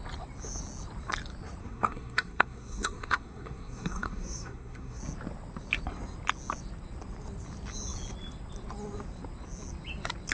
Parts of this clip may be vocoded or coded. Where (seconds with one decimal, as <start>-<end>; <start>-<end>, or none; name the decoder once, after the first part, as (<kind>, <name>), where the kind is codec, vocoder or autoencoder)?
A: 1.6-5.0 (codec, SNAC)